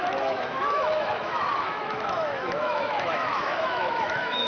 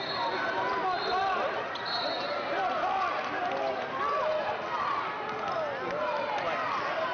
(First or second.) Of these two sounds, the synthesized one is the first